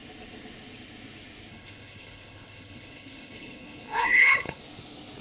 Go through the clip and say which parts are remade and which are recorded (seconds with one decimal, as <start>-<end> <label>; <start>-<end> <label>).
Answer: 0.0-1.5 recorded; 1.5-4.6 remade; 4.6-5.2 recorded